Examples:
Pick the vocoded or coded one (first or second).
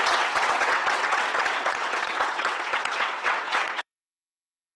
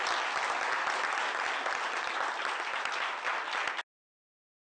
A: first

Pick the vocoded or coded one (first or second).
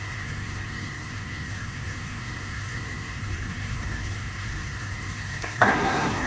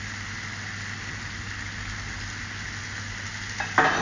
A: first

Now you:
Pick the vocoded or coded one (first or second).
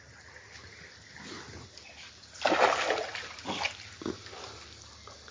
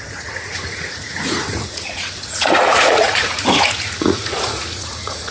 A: second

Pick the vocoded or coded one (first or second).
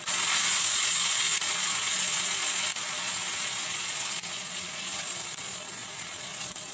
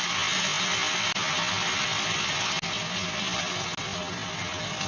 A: first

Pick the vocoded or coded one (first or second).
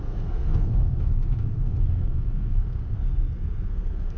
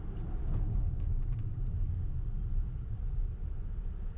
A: first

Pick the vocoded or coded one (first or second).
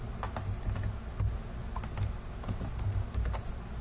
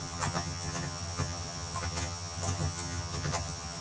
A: second